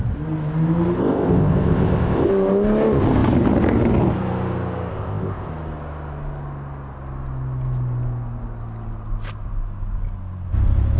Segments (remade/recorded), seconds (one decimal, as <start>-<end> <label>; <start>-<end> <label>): 0.0-1.0 recorded; 1.0-2.3 remade; 2.3-4.9 recorded; 4.9-5.5 remade; 5.5-11.0 recorded